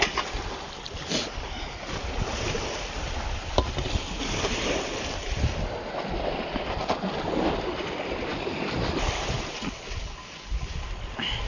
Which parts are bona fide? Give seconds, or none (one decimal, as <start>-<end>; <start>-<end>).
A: 0.0-11.5